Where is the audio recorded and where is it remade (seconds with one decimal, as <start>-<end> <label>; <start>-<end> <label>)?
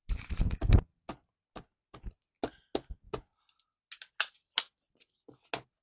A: 0.0-5.8 recorded